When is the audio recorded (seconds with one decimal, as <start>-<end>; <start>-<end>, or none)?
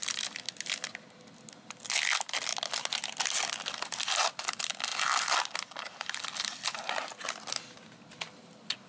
0.0-8.9